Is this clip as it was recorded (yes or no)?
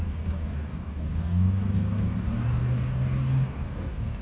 no